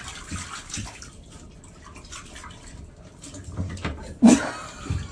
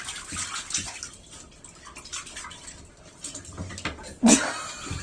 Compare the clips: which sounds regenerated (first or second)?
first